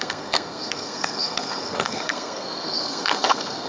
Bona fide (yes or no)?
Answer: no